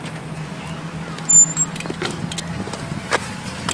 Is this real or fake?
real